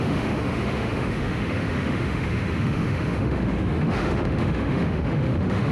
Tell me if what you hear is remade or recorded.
remade